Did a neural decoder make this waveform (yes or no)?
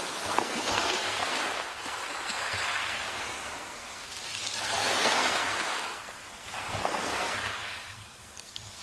yes